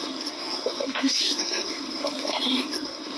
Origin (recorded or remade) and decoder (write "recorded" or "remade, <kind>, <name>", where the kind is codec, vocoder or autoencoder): remade, codec, SNAC